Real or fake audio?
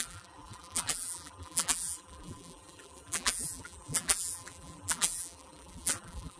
fake